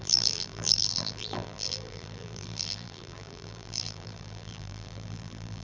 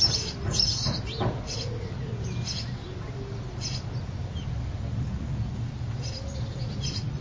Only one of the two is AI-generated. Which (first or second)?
first